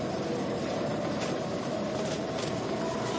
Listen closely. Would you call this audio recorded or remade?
recorded